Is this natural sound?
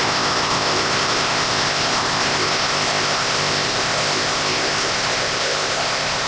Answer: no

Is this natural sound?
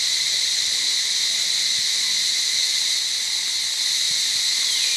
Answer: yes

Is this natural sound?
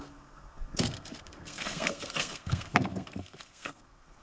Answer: no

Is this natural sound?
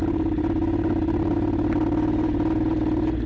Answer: yes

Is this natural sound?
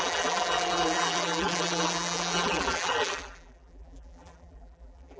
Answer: no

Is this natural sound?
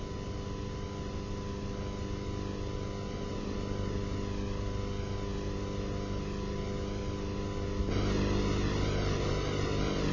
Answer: yes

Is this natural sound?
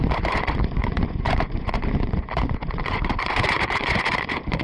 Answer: no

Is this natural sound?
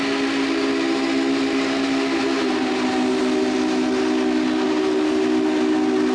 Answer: yes